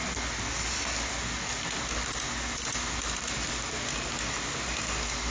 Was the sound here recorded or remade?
recorded